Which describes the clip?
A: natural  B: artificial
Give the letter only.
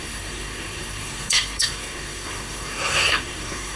B